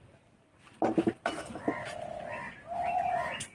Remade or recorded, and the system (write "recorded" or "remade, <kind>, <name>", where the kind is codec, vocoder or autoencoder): recorded